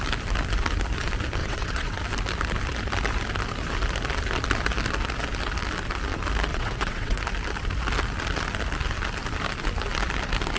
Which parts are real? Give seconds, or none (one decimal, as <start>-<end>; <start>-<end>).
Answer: 0.0-1.4; 2.0-6.5; 7.2-10.6